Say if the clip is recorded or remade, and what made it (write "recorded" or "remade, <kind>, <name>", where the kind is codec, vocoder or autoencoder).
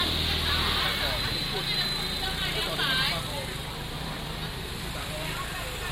recorded